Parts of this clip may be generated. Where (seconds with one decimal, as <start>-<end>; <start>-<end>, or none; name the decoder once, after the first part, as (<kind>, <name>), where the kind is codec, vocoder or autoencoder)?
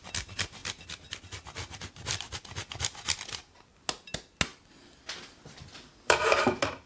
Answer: 4.5-6.9 (vocoder, BigVGAN v2)